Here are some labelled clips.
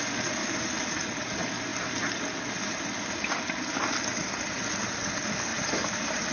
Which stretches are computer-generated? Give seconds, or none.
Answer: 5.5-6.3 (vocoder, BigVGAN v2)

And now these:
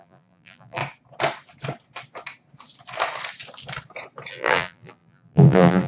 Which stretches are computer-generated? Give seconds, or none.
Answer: 0.0-0.8 (vocoder, BigVGAN v2); 4.3-5.9

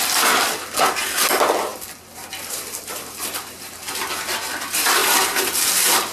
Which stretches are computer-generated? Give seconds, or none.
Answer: 1.7-4.1 (vocoder, BigVGAN v2); 5.0-5.5

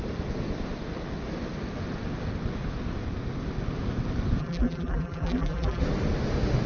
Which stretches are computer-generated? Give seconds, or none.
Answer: 4.4-5.8 (vocoder, BigVGAN v2)

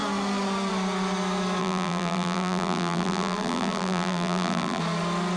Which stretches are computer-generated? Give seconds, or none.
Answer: 1.6-4.8 (vocoder, BigVGAN v2)

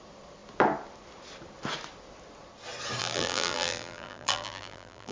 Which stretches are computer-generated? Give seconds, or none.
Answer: 3.0-5.1 (vocoder, BigVGAN v2)

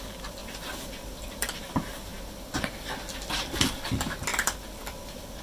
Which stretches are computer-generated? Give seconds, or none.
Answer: 0.4-1.7 (vocoder, BigVGAN v2); 4.3-5.4